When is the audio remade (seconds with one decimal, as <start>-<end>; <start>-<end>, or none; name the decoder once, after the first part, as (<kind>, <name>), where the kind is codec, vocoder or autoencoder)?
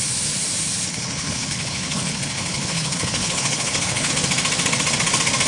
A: 0.9-4.1 (codec, HILCodec)